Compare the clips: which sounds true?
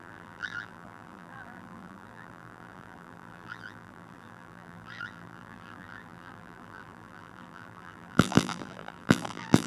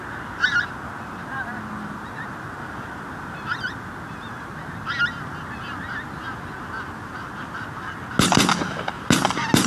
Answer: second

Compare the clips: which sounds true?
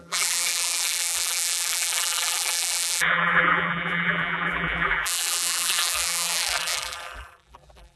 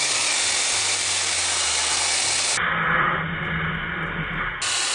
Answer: second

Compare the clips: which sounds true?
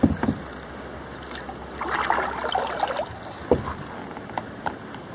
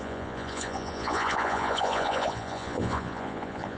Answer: first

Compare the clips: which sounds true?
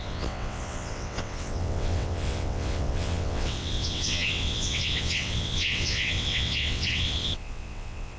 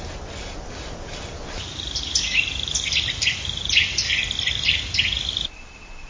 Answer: second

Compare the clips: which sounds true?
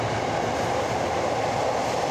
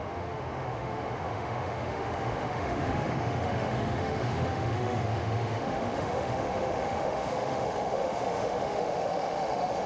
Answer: first